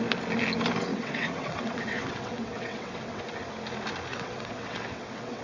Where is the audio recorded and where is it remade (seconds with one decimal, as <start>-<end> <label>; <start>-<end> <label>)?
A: 0.0-0.9 recorded; 0.9-3.2 remade; 3.2-4.1 recorded; 4.1-5.4 remade